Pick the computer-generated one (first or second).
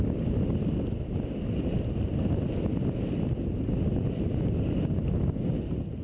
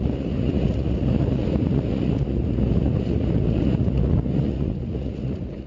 second